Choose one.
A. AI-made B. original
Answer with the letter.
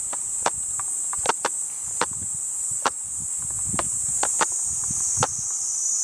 B